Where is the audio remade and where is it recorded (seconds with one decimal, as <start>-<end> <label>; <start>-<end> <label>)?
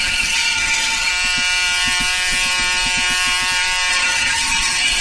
0.0-1.1 remade; 1.1-3.9 recorded; 3.9-5.0 remade